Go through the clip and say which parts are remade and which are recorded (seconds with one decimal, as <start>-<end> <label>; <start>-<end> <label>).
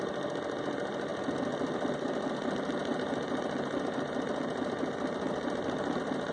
0.0-6.3 recorded